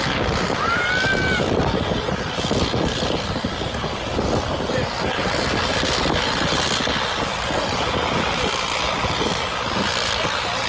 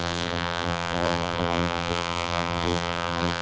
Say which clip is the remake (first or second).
second